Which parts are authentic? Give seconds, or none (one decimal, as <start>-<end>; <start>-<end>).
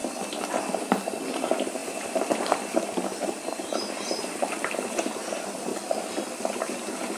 0.0-1.3; 5.7-6.4